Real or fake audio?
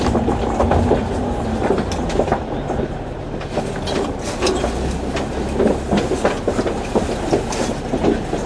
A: real